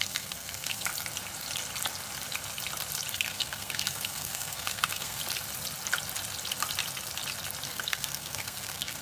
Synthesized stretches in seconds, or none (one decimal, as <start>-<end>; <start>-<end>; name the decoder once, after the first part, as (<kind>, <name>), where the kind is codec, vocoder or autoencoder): 0.0-0.9 (codec, SNAC); 3.1-5.2; 7.7-9.0